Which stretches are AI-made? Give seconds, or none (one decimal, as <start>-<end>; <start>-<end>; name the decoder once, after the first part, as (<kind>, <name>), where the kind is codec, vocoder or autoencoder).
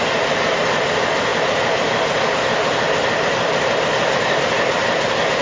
none